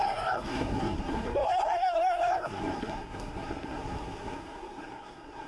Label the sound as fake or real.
fake